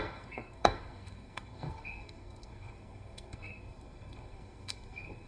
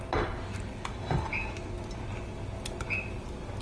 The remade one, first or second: first